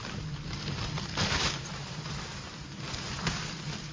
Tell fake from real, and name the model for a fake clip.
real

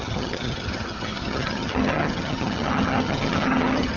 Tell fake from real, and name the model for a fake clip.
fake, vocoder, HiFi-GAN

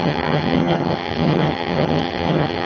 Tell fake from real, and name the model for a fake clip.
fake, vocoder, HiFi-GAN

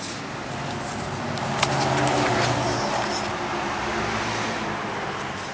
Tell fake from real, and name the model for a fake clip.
real